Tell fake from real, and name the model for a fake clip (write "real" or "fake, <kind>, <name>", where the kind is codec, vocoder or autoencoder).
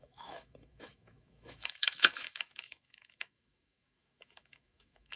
fake, autoencoder, DAC-VAE